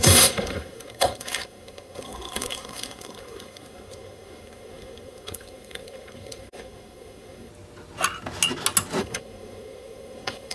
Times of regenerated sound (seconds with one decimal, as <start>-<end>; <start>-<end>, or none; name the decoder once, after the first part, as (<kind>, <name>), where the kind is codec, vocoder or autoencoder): 0.0-7.5 (codec, SNAC); 9.0-10.5